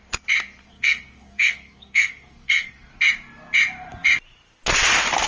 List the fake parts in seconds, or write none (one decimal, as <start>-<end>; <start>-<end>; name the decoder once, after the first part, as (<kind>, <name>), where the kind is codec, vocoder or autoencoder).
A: 0.6-2.9 (codec, SNAC)